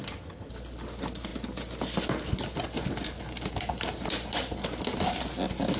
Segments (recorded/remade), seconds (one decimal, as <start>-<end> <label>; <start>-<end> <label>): 0.0-0.5 remade; 0.5-5.8 recorded